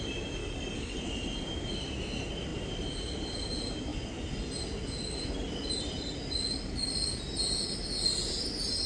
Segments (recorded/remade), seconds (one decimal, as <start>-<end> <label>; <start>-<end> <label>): 0.0-0.4 recorded; 0.4-1.0 remade; 1.0-8.9 recorded